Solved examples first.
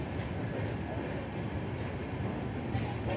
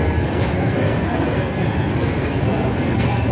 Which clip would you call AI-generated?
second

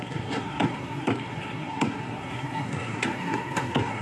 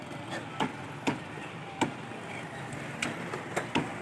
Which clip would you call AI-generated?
first